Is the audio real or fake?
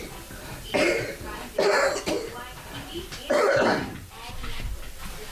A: real